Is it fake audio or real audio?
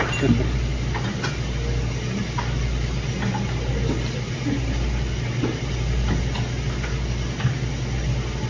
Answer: real